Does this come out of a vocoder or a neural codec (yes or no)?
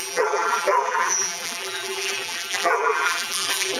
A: yes